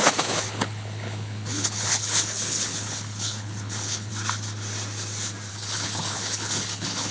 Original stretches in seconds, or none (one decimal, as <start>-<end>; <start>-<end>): 4.1-5.5